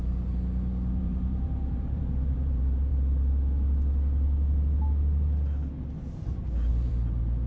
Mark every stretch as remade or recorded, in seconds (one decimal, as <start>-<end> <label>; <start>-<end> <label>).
0.0-1.0 recorded; 1.0-2.9 remade; 2.9-6.7 recorded; 6.7-7.5 remade